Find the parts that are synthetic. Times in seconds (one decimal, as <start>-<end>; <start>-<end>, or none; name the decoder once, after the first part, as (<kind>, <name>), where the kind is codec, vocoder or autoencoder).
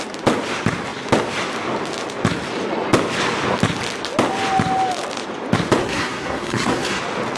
5.8-7.0 (codec, SNAC)